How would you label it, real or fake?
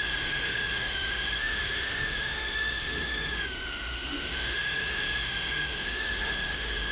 fake